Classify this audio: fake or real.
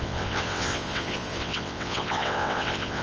fake